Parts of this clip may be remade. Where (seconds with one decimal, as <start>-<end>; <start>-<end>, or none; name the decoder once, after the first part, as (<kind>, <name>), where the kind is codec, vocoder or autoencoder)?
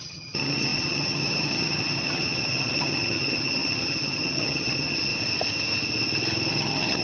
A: 0.0-5.1 (vocoder, HiFi-GAN); 6.5-7.0